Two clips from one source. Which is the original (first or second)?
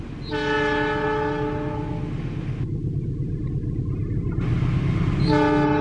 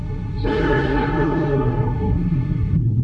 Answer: first